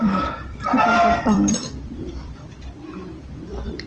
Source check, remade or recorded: remade